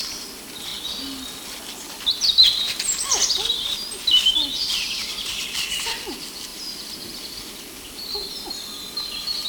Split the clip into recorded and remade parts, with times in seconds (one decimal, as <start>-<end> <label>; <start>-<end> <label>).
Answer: 0.0-0.7 remade; 0.7-1.6 recorded; 1.6-9.5 remade